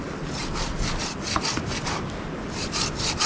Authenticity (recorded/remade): recorded